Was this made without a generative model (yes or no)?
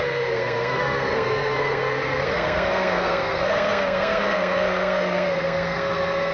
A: no